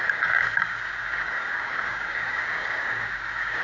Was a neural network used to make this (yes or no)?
yes